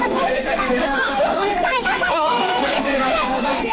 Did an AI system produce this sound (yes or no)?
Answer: yes